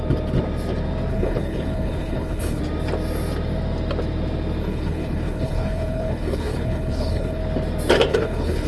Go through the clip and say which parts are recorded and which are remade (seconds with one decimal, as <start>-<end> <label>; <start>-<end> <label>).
0.0-1.1 recorded; 1.1-2.6 remade; 2.6-4.6 recorded; 4.6-7.4 remade; 7.4-8.1 recorded; 8.1-8.7 remade